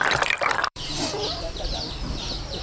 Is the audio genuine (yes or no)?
no